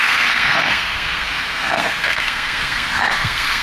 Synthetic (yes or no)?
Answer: yes